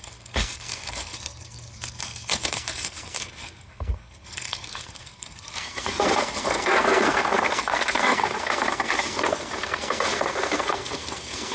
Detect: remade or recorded remade